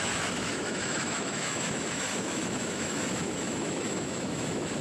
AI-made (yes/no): yes